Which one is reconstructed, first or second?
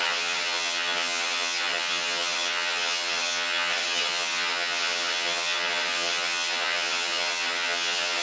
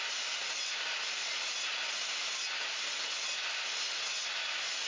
first